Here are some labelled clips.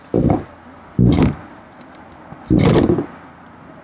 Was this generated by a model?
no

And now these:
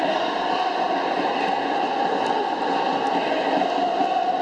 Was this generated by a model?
no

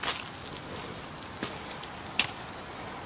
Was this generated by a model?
no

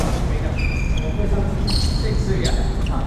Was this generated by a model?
no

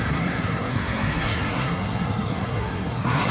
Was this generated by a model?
yes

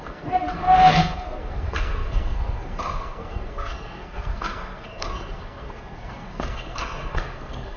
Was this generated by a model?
yes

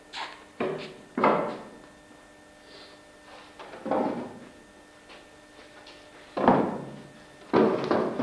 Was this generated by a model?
no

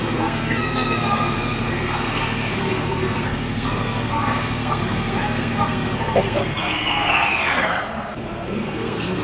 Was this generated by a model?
yes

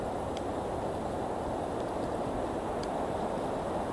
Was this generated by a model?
no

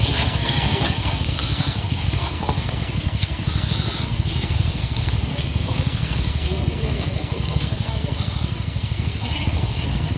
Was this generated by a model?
yes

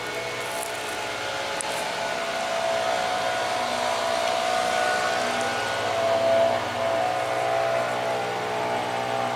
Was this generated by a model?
no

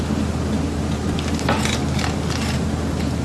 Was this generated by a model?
no